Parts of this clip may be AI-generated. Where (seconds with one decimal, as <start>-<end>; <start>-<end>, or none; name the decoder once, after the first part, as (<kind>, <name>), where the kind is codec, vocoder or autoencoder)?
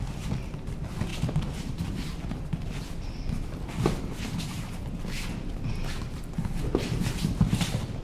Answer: none